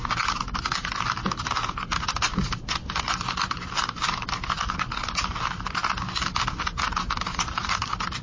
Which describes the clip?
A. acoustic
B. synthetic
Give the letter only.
A